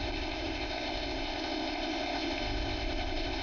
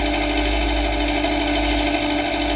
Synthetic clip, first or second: first